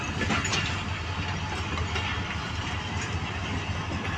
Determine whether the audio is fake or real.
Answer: real